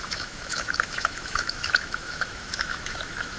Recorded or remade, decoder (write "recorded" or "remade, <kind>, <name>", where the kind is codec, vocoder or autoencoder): remade, autoencoder, DAC-VAE